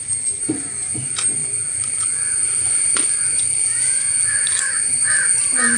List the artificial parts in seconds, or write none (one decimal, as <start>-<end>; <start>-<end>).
1.4-4.9